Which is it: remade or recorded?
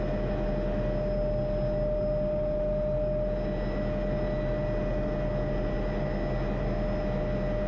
recorded